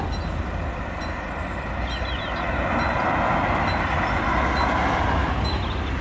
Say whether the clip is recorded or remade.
recorded